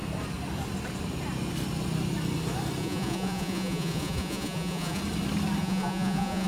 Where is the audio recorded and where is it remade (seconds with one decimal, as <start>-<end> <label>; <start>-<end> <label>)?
0.0-2.8 recorded; 2.8-5.0 remade; 5.0-5.6 recorded; 5.6-6.5 remade